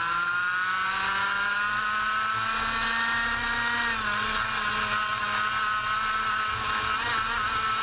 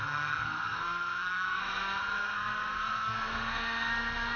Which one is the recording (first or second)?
first